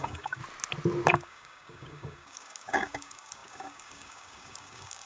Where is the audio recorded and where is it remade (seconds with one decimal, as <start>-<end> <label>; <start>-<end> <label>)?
0.0-0.4 remade; 0.4-1.1 recorded; 1.1-5.1 remade